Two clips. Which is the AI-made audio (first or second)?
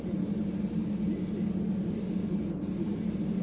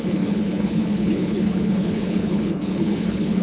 second